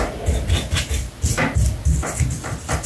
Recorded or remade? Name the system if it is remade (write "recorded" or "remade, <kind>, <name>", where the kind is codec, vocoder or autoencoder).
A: recorded